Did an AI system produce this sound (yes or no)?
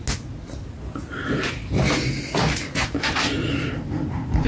no